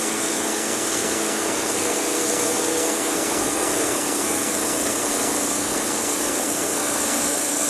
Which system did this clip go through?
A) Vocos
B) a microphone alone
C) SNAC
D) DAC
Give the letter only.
C